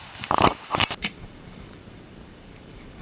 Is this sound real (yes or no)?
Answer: no